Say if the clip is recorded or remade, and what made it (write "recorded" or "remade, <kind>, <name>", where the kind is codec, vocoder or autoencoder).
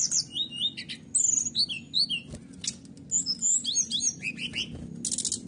recorded